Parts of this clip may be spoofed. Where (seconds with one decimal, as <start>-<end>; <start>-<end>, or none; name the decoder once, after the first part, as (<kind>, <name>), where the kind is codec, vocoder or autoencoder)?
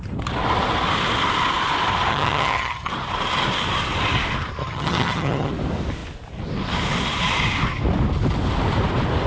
2.1-2.9 (vocoder, HiFi-GAN); 4.6-5.5